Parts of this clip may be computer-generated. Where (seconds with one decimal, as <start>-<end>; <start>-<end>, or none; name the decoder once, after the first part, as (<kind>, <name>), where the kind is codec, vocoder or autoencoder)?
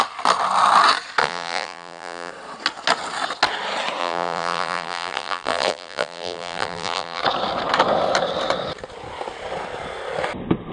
1.2-2.3 (vocoder, BigVGAN v2); 4.0-7.2